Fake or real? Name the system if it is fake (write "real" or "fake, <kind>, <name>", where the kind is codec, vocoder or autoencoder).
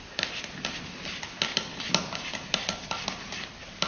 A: real